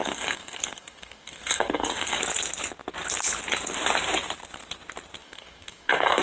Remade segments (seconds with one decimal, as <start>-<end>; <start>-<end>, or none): 0.0-2.2; 5.2-6.2